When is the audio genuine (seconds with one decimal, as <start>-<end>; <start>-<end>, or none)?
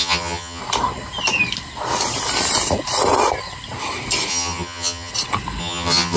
0.6-4.3; 5.1-5.6